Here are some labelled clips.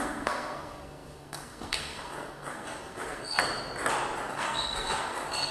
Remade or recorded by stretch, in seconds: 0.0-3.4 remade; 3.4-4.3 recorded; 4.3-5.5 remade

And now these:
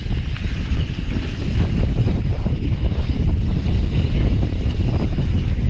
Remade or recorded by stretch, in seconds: 0.0-5.7 recorded

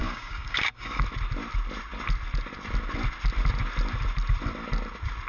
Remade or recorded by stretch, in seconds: 0.0-1.0 remade; 1.0-5.3 recorded

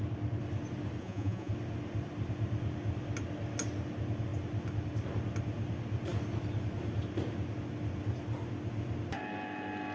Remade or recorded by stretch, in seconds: 0.0-1.0 recorded; 1.0-1.5 remade; 1.5-9.9 recorded

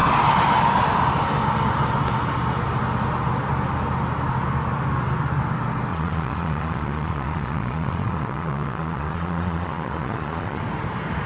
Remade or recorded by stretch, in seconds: 0.0-5.9 recorded; 5.9-10.6 remade; 10.6-11.3 recorded